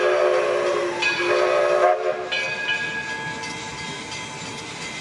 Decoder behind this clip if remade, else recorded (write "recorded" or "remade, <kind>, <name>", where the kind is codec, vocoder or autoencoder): recorded